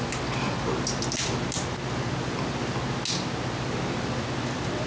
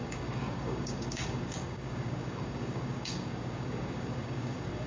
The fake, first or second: second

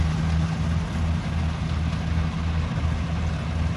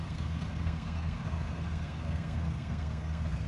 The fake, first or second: second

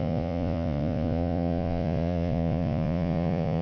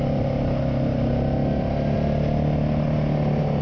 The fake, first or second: first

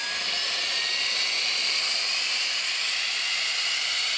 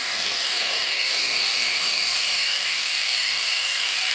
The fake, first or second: second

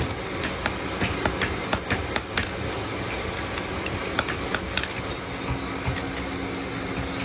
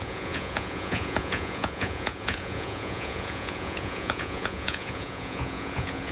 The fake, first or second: second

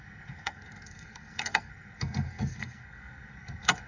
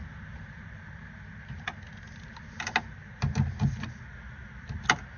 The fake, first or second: first